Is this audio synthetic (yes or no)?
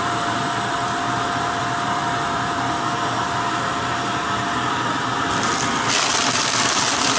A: yes